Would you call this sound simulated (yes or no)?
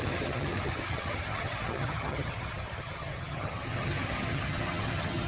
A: yes